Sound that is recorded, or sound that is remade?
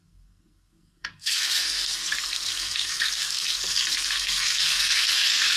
remade